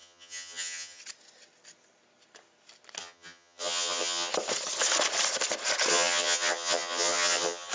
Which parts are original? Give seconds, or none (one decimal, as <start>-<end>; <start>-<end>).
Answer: 1.0-3.0; 4.3-5.9